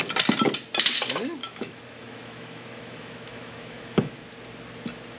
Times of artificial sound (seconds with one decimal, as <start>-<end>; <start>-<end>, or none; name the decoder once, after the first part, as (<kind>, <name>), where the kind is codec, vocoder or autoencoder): 1.4-4.2 (autoencoder, DAC-VAE)